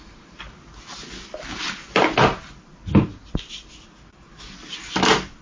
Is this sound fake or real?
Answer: real